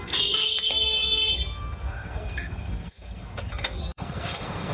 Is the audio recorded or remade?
remade